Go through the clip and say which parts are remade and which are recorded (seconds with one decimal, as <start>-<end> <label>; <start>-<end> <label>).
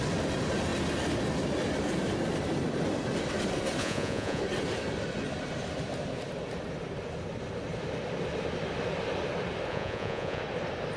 0.0-3.8 recorded; 3.8-4.4 remade; 4.4-9.7 recorded; 9.7-10.4 remade; 10.4-11.0 recorded